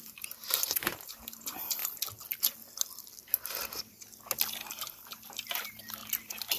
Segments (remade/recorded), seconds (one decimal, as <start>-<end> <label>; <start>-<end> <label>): 0.0-1.8 remade; 1.8-4.7 recorded; 4.7-6.0 remade; 6.0-6.6 recorded